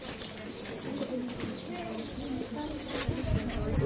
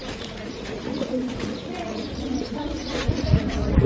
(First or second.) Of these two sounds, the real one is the first